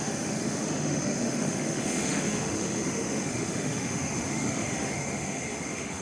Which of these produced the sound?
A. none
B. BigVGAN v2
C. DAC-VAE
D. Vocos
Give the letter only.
C